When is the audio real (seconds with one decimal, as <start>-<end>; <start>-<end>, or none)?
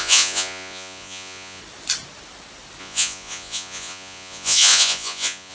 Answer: 1.6-2.8